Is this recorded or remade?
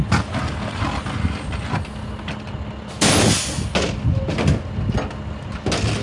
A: recorded